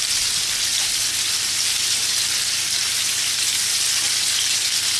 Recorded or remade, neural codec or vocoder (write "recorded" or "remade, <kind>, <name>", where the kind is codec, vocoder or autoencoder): remade, vocoder, BigVGAN v2